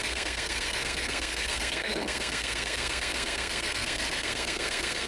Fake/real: fake